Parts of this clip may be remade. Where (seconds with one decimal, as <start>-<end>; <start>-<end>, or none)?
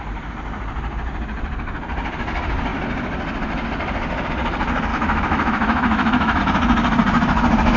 4.9-6.4